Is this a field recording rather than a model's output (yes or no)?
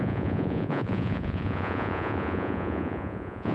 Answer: no